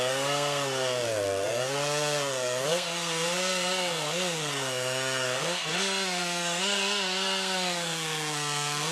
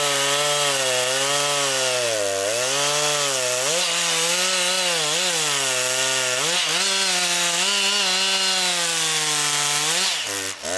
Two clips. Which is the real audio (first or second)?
second